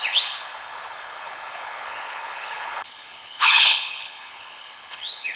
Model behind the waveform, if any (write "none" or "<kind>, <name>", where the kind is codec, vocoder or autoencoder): codec, HILCodec